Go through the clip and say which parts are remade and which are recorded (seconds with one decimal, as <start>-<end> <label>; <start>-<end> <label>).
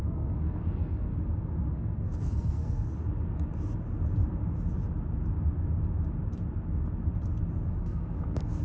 0.0-1.1 remade; 1.1-1.7 recorded; 1.7-2.9 remade; 2.9-7.8 recorded; 7.8-8.6 remade